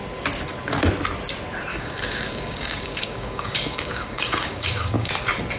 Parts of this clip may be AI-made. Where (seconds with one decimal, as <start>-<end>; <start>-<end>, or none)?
1.7-5.1